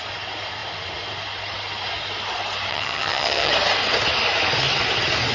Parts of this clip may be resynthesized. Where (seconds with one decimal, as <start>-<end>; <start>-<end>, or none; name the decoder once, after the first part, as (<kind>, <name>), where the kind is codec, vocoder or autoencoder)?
2.7-3.5 (vocoder, HiFi-GAN)